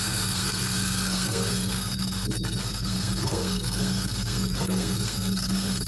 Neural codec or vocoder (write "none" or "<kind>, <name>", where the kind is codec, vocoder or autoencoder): codec, SNAC